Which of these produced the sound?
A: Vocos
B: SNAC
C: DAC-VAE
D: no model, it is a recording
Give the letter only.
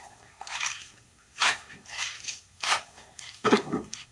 B